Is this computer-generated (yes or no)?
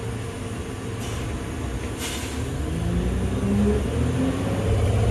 no